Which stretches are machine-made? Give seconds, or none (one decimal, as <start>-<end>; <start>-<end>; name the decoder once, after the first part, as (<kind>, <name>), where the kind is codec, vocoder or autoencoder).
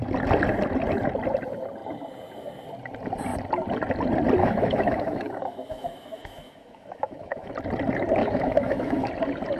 4.4-7.5 (autoencoder, DAC-VAE); 8.2-9.1